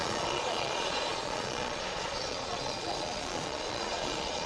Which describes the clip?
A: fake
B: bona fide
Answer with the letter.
A